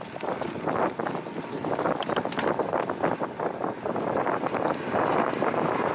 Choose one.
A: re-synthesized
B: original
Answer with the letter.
B